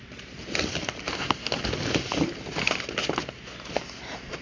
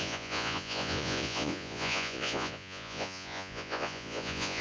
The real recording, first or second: first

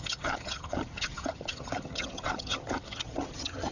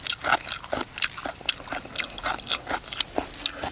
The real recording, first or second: second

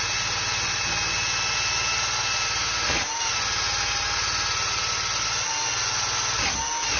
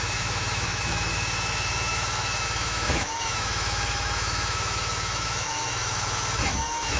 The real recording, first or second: first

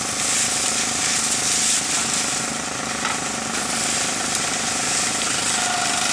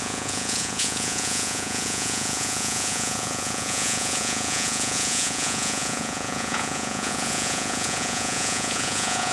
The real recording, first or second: first